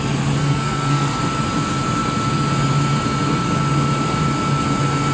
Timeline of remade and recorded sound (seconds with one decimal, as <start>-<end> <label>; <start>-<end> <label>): 0.0-0.4 recorded; 0.4-1.2 remade; 1.2-5.1 recorded